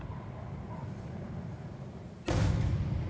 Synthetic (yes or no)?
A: no